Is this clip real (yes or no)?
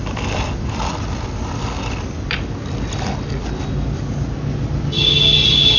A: yes